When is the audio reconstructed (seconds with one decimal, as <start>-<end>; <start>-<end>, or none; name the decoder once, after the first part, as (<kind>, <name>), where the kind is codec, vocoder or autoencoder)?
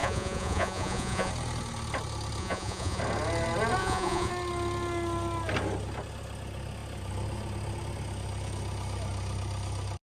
0.0-1.3 (vocoder, Vocos); 2.4-3.0; 3.8-4.3